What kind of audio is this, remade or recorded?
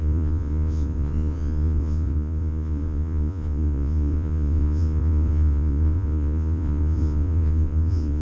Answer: remade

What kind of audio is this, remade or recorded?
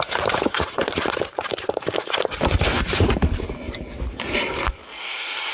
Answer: remade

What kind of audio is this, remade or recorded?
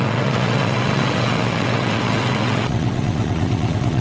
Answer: remade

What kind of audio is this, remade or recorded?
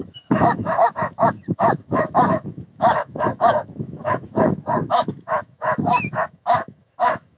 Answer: remade